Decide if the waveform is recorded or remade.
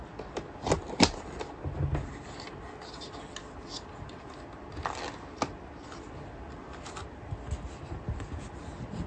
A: recorded